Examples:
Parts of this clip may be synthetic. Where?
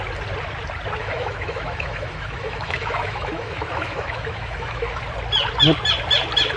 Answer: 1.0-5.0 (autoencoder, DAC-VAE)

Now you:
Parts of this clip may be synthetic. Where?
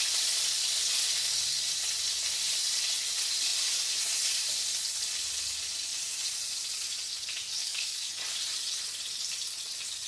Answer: 7.6-8.1 (codec, DAC)